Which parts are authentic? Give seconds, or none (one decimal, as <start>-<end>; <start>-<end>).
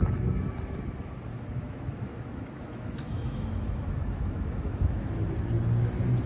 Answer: 0.0-1.3; 5.1-6.3